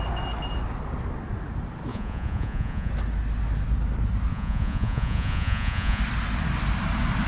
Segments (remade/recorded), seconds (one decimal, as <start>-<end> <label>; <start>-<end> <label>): 0.0-1.9 recorded; 1.9-2.9 remade; 2.9-4.3 recorded; 4.3-6.0 remade; 6.0-7.3 recorded